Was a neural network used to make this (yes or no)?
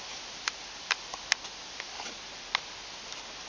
no